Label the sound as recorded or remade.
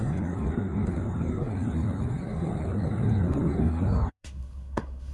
remade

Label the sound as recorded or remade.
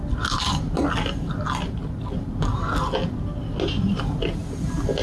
recorded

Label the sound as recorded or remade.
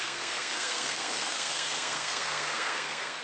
remade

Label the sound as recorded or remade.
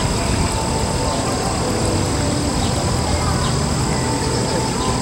recorded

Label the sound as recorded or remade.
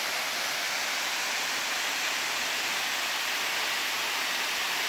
recorded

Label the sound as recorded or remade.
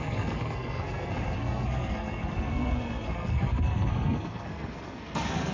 remade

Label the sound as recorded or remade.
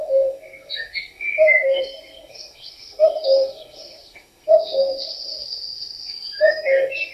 remade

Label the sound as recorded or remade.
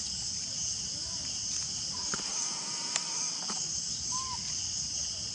recorded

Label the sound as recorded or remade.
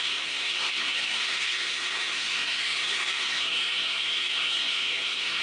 remade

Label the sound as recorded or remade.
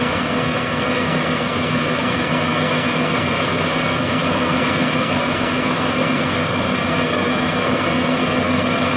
remade